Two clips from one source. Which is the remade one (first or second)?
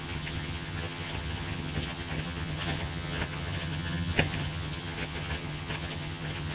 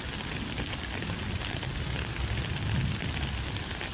first